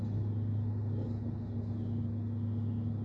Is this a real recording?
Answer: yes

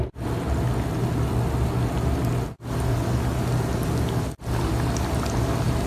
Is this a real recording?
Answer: yes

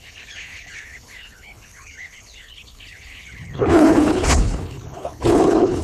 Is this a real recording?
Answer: no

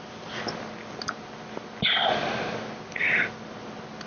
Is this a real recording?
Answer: yes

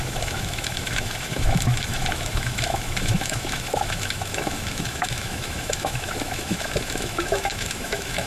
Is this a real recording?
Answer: no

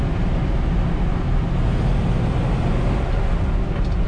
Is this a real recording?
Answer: yes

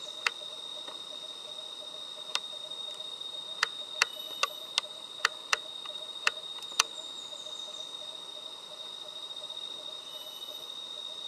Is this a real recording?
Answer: yes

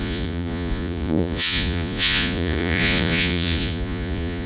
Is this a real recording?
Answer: no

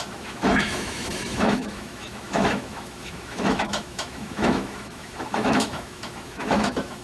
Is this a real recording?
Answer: no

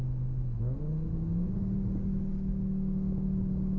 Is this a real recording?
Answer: yes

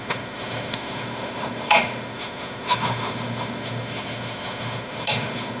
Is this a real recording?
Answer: no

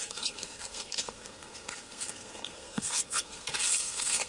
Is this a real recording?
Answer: no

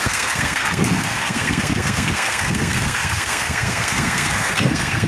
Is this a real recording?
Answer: no